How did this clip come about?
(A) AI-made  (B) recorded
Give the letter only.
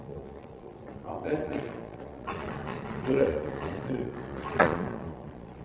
A